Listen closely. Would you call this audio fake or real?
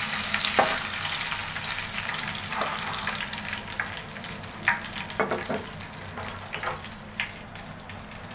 real